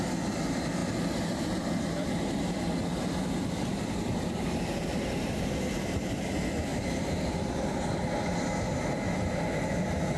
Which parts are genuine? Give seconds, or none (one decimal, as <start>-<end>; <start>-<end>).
0.0-10.2